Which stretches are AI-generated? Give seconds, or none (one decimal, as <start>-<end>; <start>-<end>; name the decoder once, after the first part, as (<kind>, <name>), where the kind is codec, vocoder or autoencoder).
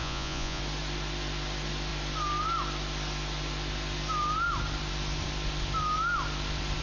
0.0-0.6 (vocoder, Vocos)